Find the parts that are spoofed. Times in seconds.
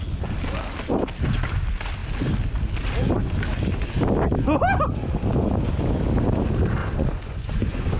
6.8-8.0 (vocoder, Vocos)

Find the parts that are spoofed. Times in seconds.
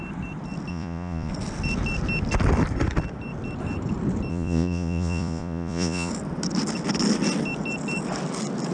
0.7-1.3 (vocoder, Vocos); 4.3-6.1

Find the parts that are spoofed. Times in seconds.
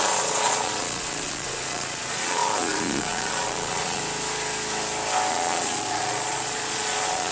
0.0-4.0 (vocoder, Vocos); 5.3-7.3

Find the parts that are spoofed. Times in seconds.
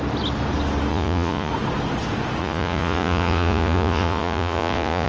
0.9-1.5 (vocoder, Vocos); 2.4-5.1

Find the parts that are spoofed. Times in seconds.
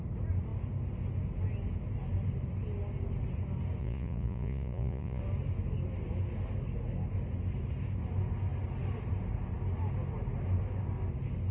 3.8-5.2 (vocoder, Vocos)